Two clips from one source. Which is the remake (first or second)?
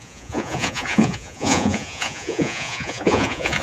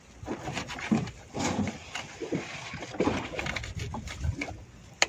first